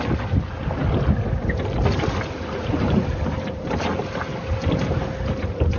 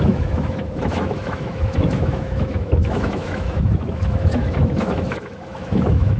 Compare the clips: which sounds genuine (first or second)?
first